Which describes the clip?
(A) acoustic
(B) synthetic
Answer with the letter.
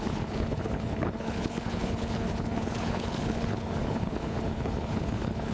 B